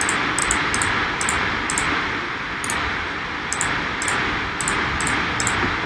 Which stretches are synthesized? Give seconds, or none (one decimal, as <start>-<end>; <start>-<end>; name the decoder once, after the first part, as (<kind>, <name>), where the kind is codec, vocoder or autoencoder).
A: none